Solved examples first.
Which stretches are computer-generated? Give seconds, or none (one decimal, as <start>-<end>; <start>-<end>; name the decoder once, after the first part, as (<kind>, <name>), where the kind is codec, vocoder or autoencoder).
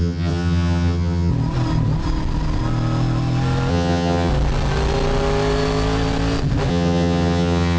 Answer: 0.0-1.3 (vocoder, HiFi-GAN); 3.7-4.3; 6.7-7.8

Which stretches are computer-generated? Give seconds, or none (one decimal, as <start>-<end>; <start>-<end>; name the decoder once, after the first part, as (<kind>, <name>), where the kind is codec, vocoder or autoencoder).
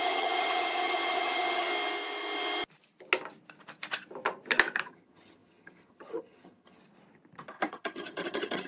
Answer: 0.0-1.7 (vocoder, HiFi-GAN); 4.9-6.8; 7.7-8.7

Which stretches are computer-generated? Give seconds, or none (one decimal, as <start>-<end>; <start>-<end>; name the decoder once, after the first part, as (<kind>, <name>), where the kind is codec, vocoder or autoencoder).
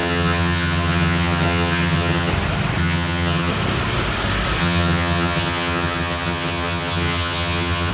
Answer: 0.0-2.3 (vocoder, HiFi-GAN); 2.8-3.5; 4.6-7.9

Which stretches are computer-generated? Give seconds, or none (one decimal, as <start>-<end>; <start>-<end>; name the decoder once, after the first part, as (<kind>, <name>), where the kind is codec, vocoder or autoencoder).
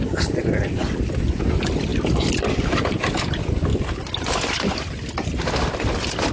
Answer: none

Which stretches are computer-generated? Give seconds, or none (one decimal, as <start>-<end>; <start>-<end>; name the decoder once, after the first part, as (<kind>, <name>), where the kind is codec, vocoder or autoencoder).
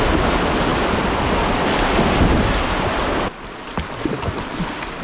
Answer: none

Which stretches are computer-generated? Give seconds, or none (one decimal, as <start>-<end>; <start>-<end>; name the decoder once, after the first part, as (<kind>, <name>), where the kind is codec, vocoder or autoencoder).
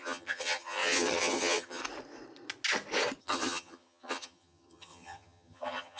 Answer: 0.0-1.8 (vocoder, HiFi-GAN); 3.2-6.0